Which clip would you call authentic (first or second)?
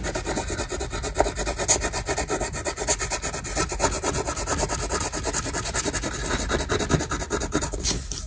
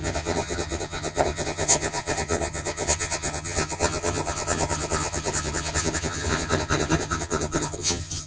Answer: first